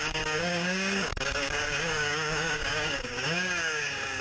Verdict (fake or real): fake